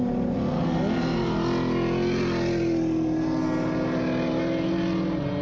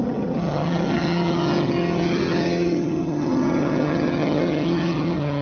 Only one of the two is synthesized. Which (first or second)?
second